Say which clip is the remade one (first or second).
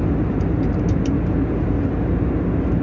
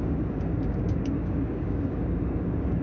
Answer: second